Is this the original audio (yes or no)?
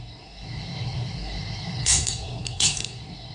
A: no